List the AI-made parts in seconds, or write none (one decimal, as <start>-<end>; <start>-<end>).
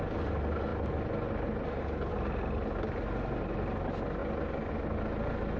none